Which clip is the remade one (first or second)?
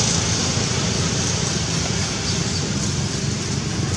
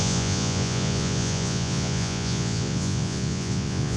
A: second